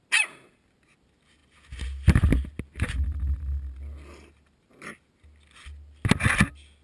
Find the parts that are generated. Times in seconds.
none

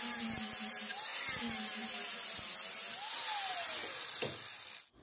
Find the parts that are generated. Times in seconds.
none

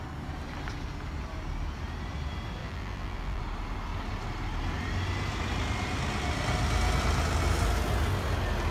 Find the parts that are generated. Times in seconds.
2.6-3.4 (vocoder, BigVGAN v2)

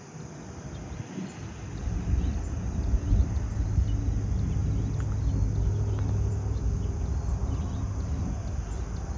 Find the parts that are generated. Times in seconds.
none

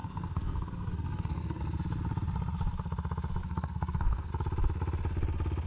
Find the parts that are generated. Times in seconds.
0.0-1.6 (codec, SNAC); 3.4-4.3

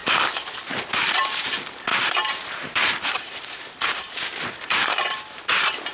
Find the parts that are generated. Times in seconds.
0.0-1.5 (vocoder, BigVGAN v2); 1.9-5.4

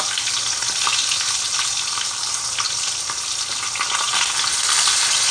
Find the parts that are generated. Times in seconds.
none